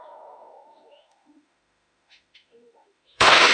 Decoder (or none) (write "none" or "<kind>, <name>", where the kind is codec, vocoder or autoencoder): autoencoder, DAC-VAE